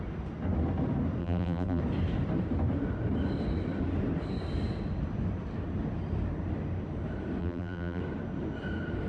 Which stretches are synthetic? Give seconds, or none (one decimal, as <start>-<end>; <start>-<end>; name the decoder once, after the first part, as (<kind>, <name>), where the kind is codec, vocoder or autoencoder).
1.2-1.8 (vocoder, BigVGAN v2); 7.4-8.0